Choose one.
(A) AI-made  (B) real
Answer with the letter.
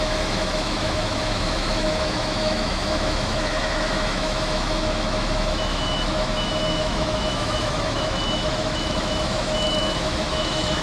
A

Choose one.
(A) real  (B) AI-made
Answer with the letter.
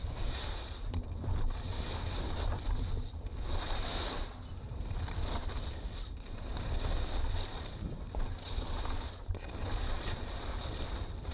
A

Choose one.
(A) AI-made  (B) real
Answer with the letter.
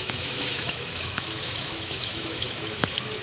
A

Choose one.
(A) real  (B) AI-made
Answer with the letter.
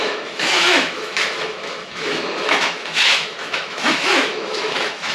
B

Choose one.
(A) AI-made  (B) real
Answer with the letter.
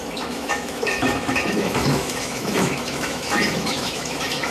A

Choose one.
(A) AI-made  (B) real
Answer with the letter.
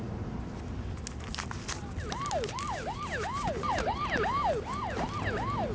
B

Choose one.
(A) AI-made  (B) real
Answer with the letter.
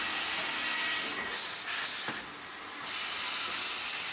B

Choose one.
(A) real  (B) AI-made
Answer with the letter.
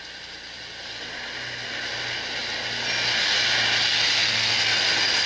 A